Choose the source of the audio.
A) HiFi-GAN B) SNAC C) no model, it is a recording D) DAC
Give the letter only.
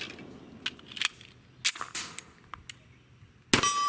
C